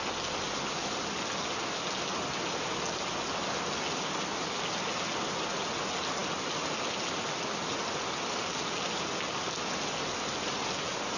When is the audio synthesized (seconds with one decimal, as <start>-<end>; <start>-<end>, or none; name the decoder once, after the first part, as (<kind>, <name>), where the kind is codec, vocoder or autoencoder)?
none